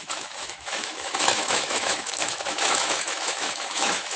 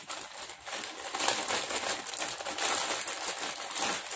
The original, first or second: second